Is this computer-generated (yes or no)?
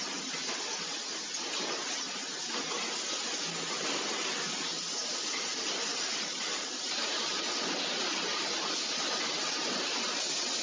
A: no